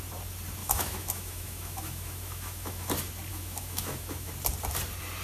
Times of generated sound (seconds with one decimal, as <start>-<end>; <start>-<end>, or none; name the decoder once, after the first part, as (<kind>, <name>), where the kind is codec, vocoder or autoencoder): 0.6-2.9 (autoencoder, DAC-VAE); 3.3-4.3